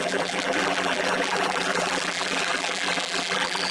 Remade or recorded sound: remade